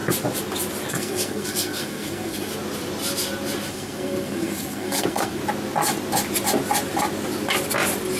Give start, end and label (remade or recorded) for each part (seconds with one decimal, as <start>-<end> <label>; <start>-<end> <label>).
0.0-0.9 recorded; 0.9-2.5 remade; 2.5-3.7 recorded; 3.7-5.4 remade; 5.4-8.2 recorded